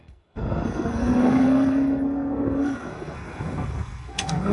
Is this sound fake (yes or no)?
yes